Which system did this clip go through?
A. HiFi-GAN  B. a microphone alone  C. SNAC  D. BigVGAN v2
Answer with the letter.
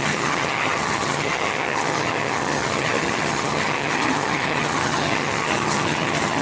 A